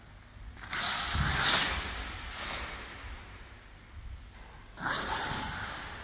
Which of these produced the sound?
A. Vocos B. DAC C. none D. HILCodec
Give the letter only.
C